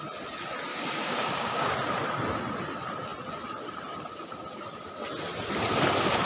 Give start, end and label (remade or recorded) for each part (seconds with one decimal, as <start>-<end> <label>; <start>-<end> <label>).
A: 0.0-0.7 recorded; 0.7-1.7 remade; 1.7-6.3 recorded